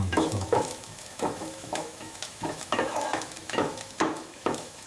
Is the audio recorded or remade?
remade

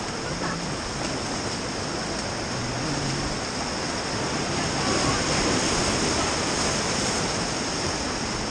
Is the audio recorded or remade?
recorded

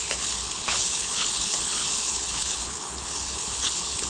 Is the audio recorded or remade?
remade